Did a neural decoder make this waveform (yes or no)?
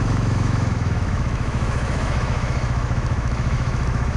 yes